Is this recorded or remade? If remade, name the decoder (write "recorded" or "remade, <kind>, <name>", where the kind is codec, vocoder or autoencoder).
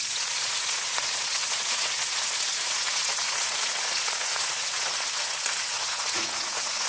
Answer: remade, vocoder, Vocos